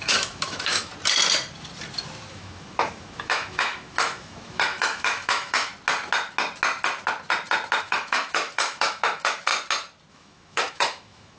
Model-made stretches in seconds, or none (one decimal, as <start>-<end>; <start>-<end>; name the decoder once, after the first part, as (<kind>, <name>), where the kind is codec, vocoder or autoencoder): 0.0-0.9 (autoencoder, DAC-VAE); 2.3-5.7; 7.8-9.5; 10.1-11.4

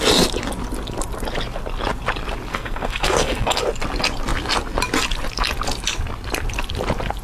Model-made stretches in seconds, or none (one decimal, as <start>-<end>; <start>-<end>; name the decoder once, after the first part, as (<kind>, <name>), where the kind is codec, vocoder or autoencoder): 2.5-3.6 (codec, SNAC)

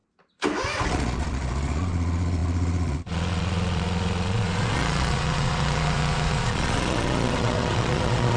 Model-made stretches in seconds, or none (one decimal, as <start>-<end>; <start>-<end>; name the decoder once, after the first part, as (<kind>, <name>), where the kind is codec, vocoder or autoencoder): 0.9-8.4 (vocoder, Vocos)

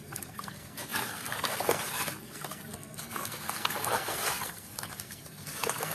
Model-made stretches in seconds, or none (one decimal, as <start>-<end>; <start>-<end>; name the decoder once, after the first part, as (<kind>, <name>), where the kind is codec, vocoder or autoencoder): 0.0-5.9 (codec, SNAC)

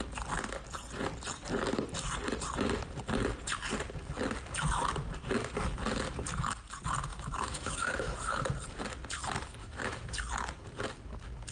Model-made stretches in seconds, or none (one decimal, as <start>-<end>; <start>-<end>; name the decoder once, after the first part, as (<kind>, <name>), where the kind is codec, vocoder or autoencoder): 7.1-8.4 (autoencoder, DAC-VAE); 9.6-10.2

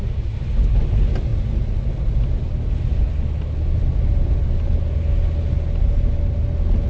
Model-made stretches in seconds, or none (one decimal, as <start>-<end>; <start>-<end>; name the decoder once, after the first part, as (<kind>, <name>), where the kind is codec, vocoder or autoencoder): none